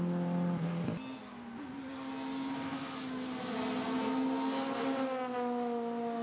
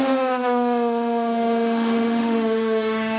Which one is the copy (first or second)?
second